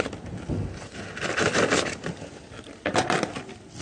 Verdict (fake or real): real